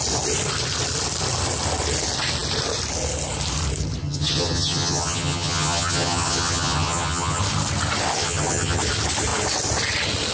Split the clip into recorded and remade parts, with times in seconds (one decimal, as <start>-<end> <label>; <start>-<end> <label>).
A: 0.0-4.0 recorded; 4.0-7.4 remade; 7.4-8.2 recorded; 8.2-8.8 remade; 8.8-10.3 recorded